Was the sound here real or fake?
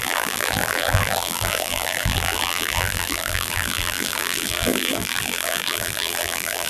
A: fake